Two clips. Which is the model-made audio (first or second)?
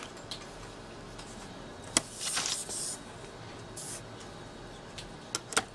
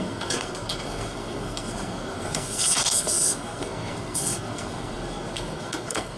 second